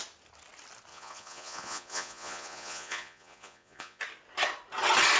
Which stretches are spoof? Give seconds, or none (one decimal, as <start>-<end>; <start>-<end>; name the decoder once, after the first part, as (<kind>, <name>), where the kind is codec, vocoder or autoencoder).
0.9-4.0 (vocoder, Vocos)